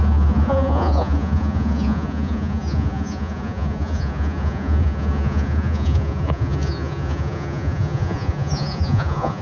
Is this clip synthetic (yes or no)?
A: yes